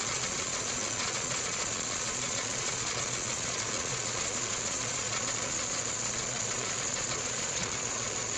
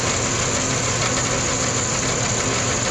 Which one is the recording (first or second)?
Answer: second